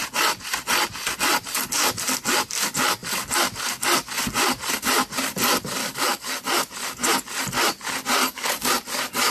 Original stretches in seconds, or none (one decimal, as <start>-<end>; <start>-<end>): 0.0-5.8; 6.3-8.2; 8.7-9.3